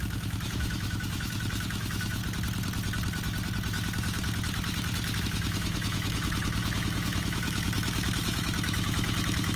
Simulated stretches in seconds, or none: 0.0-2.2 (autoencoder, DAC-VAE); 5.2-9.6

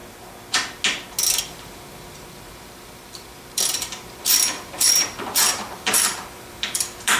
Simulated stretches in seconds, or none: 1.4-7.2 (vocoder, BigVGAN v2)